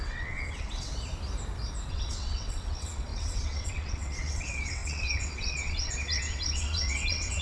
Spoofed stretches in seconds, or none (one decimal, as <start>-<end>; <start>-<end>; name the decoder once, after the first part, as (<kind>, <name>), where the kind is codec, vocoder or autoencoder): 0.0-0.9 (vocoder, WaveNeXt); 1.9-7.4